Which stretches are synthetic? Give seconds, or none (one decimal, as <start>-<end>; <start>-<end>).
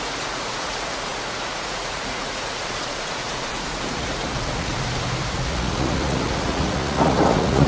0.0-4.7; 5.3-7.7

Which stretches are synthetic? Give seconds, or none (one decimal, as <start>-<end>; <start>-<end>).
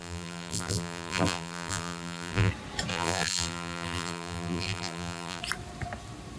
0.0-2.5; 2.9-5.4